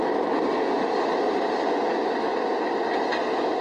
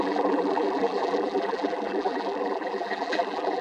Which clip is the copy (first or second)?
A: second